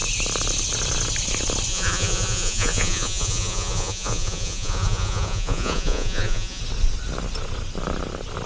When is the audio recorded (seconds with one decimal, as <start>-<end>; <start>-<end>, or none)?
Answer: 0.0-1.7; 6.6-8.5